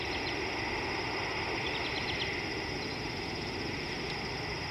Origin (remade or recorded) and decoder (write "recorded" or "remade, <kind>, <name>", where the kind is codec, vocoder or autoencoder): recorded